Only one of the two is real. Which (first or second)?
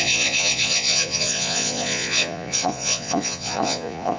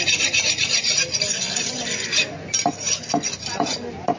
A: second